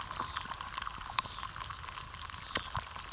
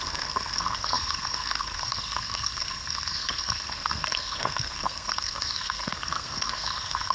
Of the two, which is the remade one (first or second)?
second